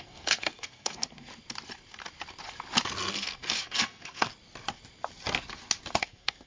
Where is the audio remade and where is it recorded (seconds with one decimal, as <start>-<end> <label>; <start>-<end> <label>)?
0.0-1.3 remade; 1.3-3.1 recorded; 3.1-4.3 remade; 4.3-6.0 recorded; 6.0-6.5 remade